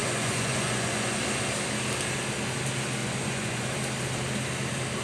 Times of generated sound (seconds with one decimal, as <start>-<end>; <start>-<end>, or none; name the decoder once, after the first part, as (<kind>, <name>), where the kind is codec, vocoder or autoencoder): 0.0-1.2 (vocoder, Vocos); 3.0-3.7